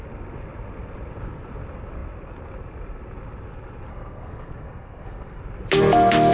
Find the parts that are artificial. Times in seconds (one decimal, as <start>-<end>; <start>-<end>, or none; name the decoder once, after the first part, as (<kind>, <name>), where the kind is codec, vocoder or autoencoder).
3.9-5.4 (codec, SNAC)